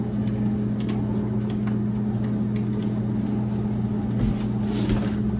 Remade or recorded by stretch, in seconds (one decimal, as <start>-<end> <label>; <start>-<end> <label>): 0.0-5.4 recorded